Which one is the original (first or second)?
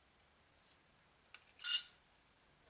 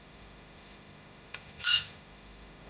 first